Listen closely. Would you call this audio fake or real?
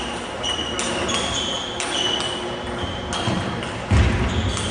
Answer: real